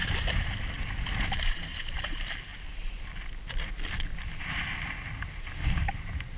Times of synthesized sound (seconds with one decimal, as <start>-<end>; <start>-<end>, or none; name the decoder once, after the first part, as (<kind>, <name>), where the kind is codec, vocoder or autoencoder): 1.2-2.5 (vocoder, BigVGAN v2); 5.7-6.4